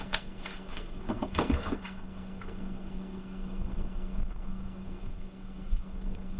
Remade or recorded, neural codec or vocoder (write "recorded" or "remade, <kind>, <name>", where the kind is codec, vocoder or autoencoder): remade, codec, SNAC